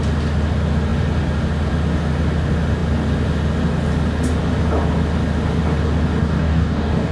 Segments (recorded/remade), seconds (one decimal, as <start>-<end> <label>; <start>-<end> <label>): 0.0-6.2 recorded; 6.2-7.1 remade